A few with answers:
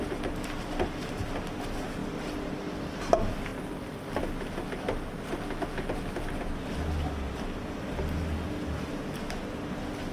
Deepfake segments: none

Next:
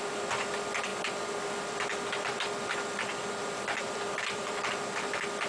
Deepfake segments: none

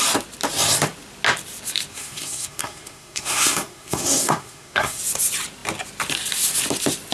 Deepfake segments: 1.9-5.0 (codec, SNAC)